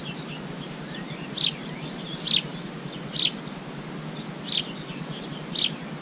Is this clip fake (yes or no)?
no